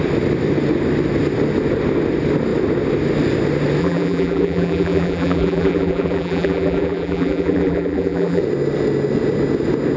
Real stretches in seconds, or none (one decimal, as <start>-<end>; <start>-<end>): 0.0-3.8; 8.4-10.0